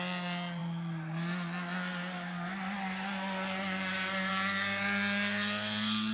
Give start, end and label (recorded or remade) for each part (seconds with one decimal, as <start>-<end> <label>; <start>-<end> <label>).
0.0-6.1 recorded